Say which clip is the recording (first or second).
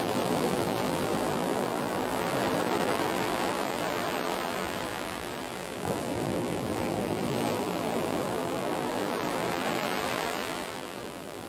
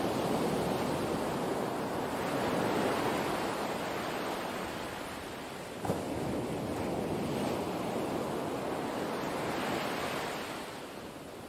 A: second